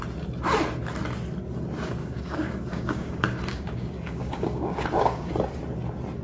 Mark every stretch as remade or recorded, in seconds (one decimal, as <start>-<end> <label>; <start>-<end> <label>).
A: 0.0-2.0 recorded; 2.0-5.3 remade; 5.3-6.2 recorded